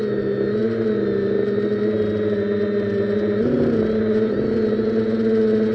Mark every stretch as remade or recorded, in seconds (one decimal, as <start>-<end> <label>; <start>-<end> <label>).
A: 0.0-5.7 recorded